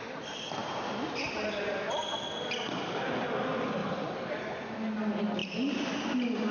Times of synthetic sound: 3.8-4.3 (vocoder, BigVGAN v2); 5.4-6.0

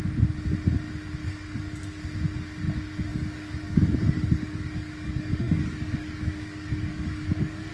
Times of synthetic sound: 1.2-2.0 (codec, DAC); 3.1-7.7

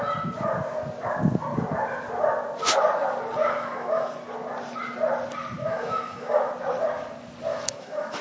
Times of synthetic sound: 3.4-4.1 (autoencoder, DAC-VAE); 5.6-6.5; 7.5-8.2